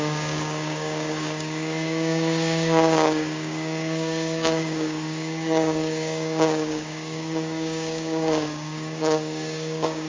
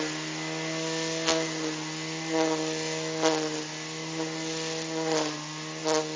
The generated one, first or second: first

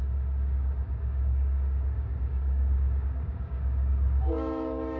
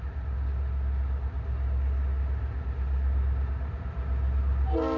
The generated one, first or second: first